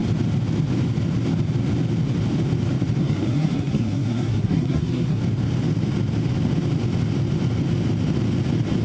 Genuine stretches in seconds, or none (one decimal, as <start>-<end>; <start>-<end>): 0.0-3.0; 5.2-8.8